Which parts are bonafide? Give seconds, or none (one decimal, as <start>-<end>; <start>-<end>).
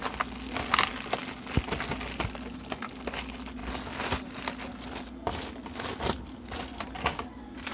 0.0-7.7